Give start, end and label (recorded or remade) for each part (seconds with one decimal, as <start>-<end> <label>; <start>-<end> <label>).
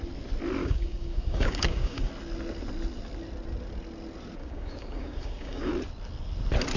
0.0-0.6 recorded; 0.6-2.1 remade; 2.1-4.4 recorded; 4.4-5.7 remade; 5.7-6.8 recorded